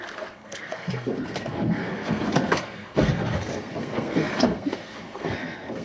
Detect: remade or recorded remade